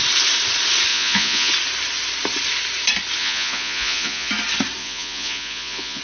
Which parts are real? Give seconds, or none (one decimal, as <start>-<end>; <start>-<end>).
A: 0.0-0.9; 1.5-3.2; 4.3-4.8